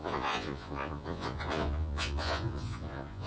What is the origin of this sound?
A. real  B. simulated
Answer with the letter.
B